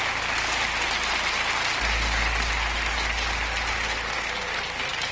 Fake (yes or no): no